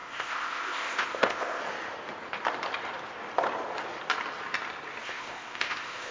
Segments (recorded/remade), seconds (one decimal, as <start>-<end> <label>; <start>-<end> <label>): 0.0-1.6 remade; 1.6-5.0 recorded; 5.0-6.1 remade